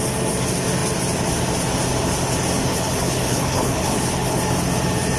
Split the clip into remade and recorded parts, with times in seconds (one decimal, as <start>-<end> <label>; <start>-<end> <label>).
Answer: 0.0-2.7 recorded; 2.7-4.4 remade; 4.4-5.2 recorded